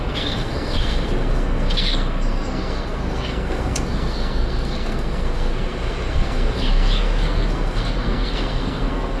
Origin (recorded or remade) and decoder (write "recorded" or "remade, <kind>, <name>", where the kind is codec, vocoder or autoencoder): remade, codec, SNAC